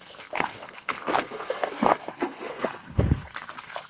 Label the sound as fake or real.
fake